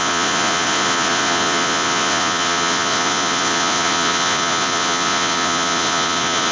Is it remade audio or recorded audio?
remade